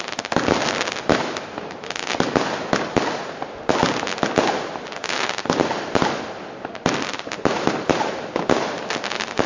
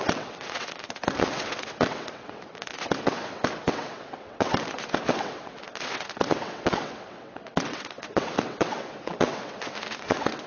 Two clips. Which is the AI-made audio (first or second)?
second